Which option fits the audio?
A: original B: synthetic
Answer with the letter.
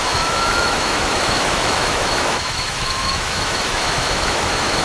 B